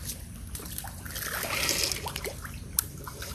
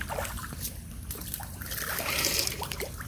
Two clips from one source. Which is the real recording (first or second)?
first